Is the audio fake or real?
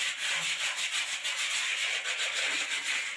real